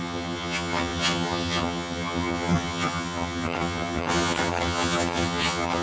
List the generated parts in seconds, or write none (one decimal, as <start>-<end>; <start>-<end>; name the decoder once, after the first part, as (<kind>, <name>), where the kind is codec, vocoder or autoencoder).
0.0-5.8 (vocoder, HiFi-GAN)